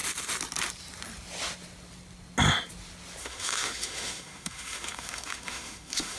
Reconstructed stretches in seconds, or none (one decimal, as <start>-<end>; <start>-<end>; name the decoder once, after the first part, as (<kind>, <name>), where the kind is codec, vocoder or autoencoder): 3.2-6.2 (autoencoder, DAC-VAE)